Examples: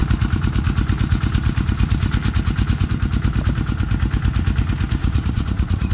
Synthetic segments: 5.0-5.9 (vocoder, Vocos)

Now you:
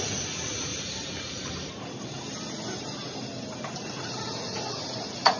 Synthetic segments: 0.0-0.7 (vocoder, Vocos); 3.9-5.4

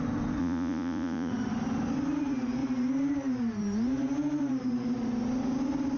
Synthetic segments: 0.4-1.3 (vocoder, Vocos)

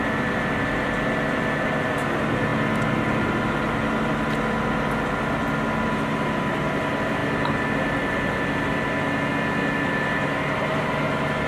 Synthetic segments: none

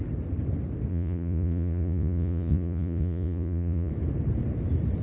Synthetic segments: 0.9-3.9 (vocoder, Vocos)

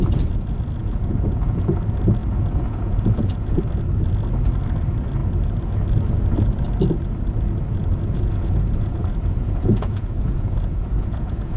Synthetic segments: 0.8-1.7 (vocoder, Vocos); 2.2-3.6; 7.8-11.6

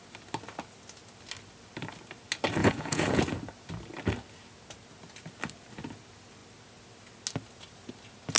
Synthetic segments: 2.6-3.2 (vocoder, Vocos)

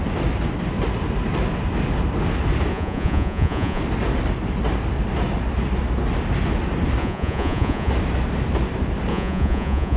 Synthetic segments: 2.7-3.8 (vocoder, Vocos); 7.0-7.9; 9.1-10.0